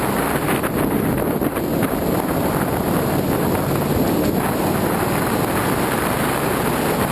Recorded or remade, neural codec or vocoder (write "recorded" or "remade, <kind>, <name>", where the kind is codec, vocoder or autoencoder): recorded